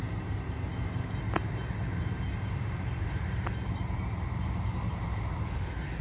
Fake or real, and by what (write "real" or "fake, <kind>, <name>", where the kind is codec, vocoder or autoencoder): fake, vocoder, BigVGAN v2